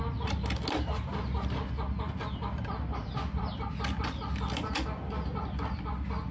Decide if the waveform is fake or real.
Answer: real